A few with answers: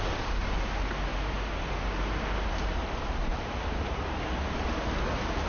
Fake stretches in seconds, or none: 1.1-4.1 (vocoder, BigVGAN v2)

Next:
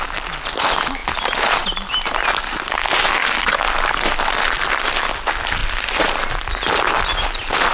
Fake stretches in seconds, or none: 5.6-6.2 (vocoder, BigVGAN v2)

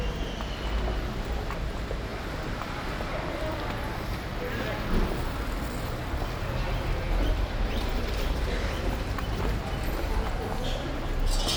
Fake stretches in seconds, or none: 2.1-4.3 (vocoder, BigVGAN v2); 7.3-9.6

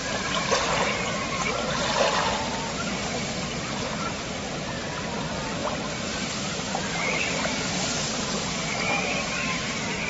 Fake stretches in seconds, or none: none